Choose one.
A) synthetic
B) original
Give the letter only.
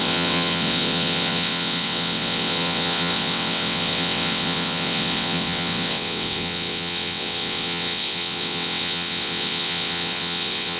A